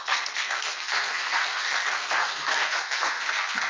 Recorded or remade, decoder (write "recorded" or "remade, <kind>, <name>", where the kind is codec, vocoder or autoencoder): remade, codec, SNAC